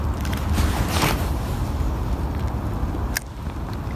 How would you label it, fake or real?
real